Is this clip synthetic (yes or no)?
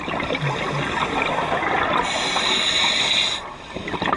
no